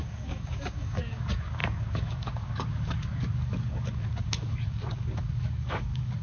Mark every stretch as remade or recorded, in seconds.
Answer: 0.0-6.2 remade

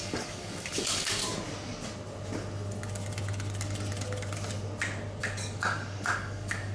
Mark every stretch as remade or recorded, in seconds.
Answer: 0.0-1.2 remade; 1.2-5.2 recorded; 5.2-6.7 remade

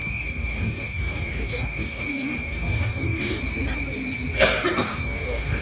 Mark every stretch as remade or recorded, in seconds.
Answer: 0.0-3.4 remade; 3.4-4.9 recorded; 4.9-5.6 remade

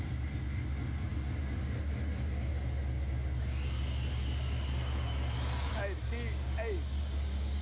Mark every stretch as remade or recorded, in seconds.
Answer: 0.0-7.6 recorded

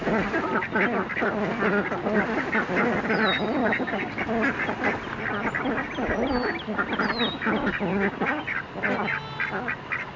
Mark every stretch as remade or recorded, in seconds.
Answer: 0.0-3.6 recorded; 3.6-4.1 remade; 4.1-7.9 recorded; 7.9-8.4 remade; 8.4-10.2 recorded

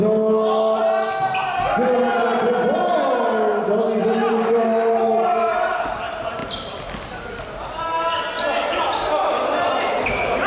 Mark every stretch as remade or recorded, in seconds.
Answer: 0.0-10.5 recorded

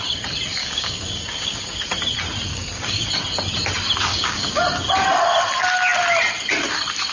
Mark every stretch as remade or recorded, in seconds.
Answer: 0.0-0.6 recorded; 0.6-1.8 remade; 1.8-2.5 recorded; 2.5-3.1 remade; 3.1-4.1 recorded; 4.1-4.6 remade; 4.6-7.1 recorded

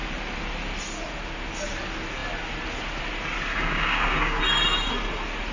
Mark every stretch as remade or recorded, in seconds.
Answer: 0.0-3.5 recorded; 3.5-4.4 remade; 4.4-5.5 recorded